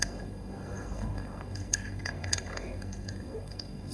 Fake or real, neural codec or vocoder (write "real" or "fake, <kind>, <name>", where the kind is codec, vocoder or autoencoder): fake, codec, SNAC